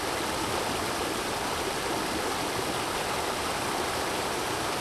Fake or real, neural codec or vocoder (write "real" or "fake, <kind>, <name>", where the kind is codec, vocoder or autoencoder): fake, vocoder, BigVGAN v2